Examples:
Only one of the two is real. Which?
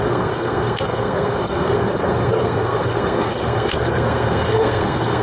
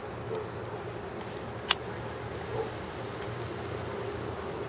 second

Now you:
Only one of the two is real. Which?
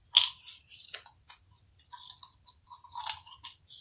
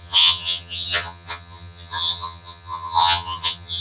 first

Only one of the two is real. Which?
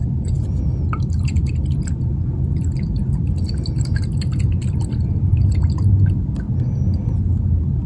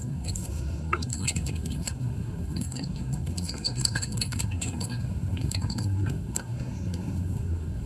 first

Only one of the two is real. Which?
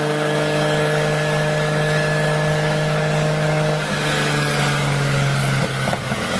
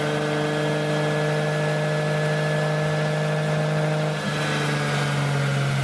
second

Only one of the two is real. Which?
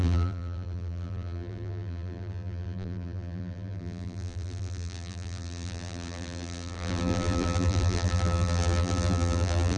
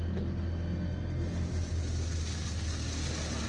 second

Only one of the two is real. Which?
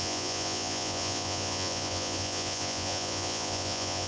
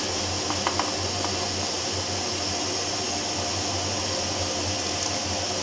second